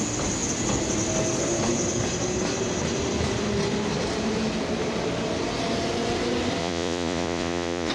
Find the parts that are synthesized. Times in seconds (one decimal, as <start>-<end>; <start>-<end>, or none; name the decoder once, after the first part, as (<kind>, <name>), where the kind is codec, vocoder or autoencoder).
6.6-7.9 (vocoder, Vocos)